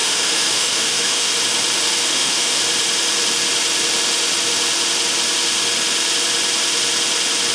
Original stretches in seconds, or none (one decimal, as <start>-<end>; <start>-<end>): 1.3-2.0; 2.6-7.5